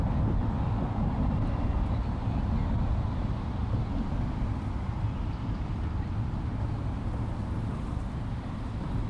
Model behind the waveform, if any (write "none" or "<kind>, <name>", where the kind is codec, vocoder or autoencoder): none